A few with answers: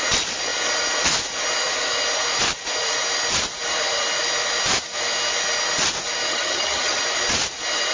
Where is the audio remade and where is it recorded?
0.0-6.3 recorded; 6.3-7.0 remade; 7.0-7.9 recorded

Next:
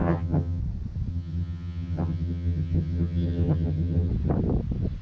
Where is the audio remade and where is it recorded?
0.0-0.6 remade; 0.6-1.1 recorded; 1.1-4.1 remade; 4.1-5.0 recorded

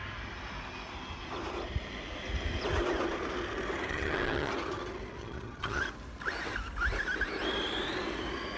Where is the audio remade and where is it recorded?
0.0-3.9 recorded; 3.9-4.5 remade; 4.5-5.2 recorded; 5.2-5.8 remade; 5.8-8.6 recorded

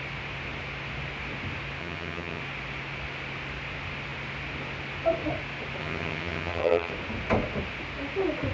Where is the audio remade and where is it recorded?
0.0-1.8 recorded; 1.8-2.4 remade; 2.4-5.8 recorded; 5.8-6.9 remade; 6.9-8.5 recorded

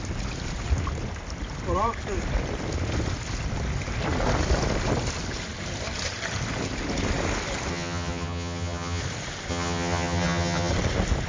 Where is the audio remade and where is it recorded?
0.0-7.7 recorded; 7.7-9.0 remade; 9.0-9.5 recorded; 9.5-10.7 remade; 10.7-11.3 recorded

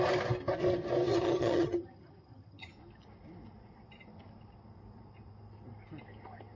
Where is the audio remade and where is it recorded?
0.0-1.1 recorded; 1.1-2.7 remade; 2.7-6.5 recorded

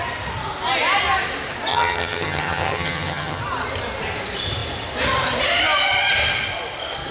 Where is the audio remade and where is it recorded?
0.0-1.7 recorded; 1.7-3.4 remade; 3.4-7.1 recorded

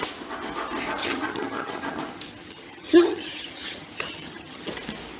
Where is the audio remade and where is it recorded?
0.0-1.0 recorded; 1.0-2.0 remade; 2.0-2.4 recorded; 2.4-4.7 remade; 4.7-5.2 recorded